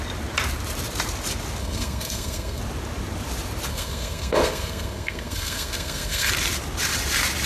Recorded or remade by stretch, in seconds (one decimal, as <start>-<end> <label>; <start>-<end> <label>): 0.0-1.6 recorded; 1.6-2.6 remade; 2.6-3.7 recorded; 3.7-6.3 remade; 6.3-7.5 recorded